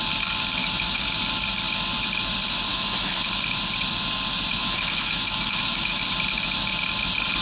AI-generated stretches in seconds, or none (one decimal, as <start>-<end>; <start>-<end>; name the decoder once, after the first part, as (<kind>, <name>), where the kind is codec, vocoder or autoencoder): 0.6-1.2 (autoencoder, DAC-VAE); 2.7-3.3; 4.6-6.0